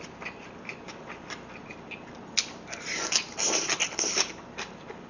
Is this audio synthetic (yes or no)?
no